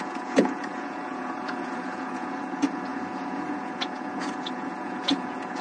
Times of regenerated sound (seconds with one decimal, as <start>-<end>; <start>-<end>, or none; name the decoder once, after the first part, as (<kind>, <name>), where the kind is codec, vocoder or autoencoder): 0.0-5.6 (vocoder, Vocos)